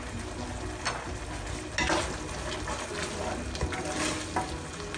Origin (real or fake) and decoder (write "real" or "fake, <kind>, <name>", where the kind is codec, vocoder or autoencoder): real